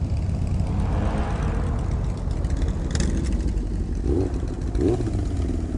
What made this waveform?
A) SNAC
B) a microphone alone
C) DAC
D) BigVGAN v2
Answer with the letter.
B